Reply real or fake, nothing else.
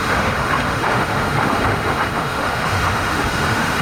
fake